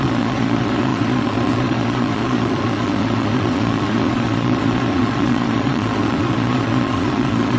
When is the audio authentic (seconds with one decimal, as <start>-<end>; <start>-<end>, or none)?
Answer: none